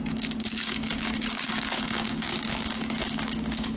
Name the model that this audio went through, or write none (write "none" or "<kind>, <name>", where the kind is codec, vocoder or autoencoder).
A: codec, DAC